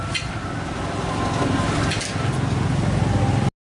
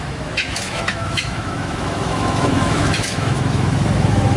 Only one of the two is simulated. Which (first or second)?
second